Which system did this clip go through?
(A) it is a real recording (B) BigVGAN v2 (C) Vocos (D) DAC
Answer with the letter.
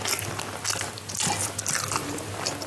A